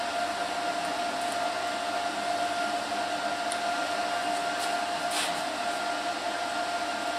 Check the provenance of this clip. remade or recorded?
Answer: recorded